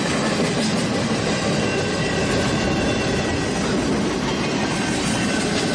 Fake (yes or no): no